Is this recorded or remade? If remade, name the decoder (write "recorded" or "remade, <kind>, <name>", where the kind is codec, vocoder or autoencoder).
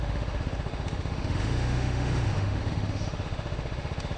remade, autoencoder, DAC-VAE